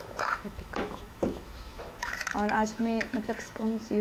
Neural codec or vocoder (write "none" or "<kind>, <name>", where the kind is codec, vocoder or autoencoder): autoencoder, DAC-VAE